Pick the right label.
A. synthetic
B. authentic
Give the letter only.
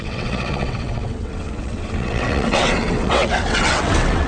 A